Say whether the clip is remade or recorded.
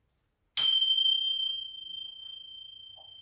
recorded